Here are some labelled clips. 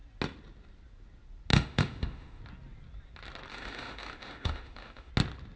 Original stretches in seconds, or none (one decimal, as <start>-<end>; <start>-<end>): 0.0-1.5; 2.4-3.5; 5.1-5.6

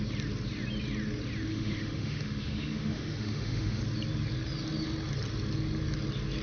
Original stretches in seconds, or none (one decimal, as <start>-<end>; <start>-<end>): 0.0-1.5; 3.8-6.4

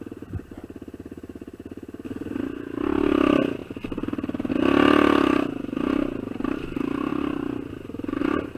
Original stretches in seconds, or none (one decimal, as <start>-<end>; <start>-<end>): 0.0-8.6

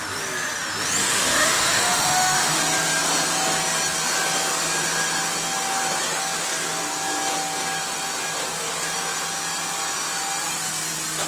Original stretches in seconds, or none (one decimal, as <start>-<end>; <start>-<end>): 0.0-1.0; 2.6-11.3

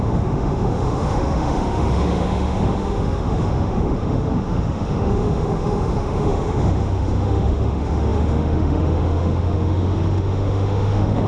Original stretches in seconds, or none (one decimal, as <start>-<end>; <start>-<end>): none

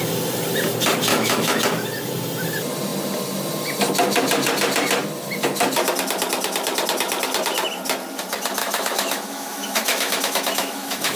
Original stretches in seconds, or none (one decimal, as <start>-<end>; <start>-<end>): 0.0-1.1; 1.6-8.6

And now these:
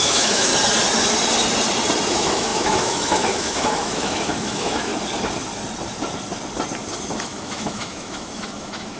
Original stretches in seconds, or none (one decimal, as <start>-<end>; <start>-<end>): 0.5-2.1; 4.9-7.2

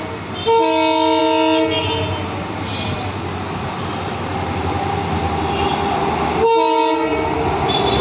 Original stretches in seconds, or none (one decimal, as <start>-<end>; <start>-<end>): 0.0-8.0